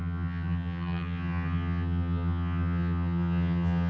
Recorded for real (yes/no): no